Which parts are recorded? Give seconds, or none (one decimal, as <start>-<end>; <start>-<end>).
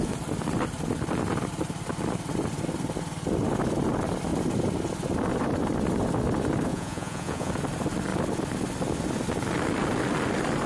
0.0-6.7; 7.5-10.7